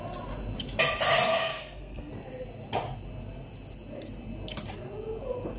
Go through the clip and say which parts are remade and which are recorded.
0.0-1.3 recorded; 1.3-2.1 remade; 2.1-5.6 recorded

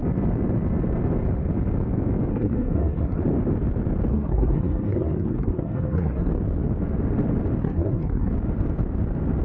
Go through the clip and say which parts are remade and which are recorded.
0.0-2.3 recorded; 2.3-3.2 remade; 3.2-4.1 recorded; 4.1-6.3 remade; 6.3-7.6 recorded; 7.6-8.3 remade; 8.3-9.4 recorded

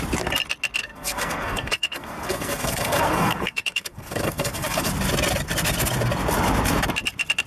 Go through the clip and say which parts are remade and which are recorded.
0.0-0.8 recorded; 0.8-4.9 remade; 4.9-7.5 recorded